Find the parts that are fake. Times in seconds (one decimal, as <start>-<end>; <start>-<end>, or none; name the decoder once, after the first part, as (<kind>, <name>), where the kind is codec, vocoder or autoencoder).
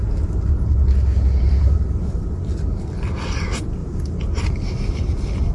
1.4-5.5 (vocoder, BigVGAN v2)